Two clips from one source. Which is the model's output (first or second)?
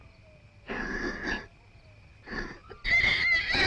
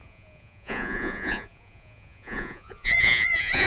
second